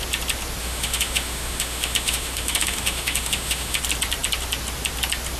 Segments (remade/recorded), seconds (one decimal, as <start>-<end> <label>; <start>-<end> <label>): 0.0-0.6 recorded; 0.6-3.8 remade; 3.8-5.4 recorded